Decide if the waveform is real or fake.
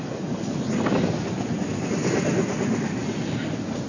real